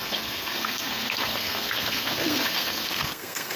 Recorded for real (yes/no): no